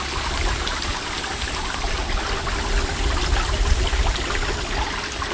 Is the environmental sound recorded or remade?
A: recorded